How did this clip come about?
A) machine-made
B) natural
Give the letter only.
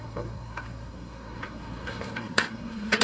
A